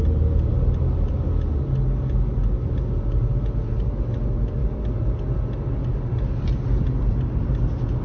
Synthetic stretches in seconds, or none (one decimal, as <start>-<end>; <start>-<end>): none